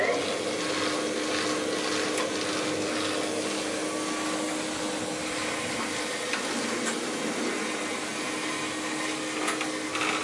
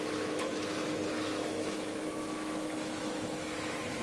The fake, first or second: second